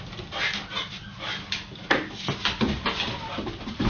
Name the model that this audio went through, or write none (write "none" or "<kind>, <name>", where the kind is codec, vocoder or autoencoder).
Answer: none